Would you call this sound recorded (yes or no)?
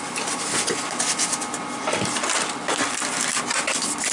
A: yes